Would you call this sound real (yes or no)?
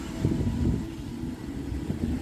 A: yes